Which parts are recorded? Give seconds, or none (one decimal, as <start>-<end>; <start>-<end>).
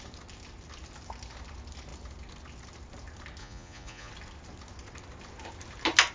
0.0-3.4; 4.1-6.1